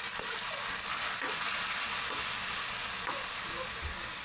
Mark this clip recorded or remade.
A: recorded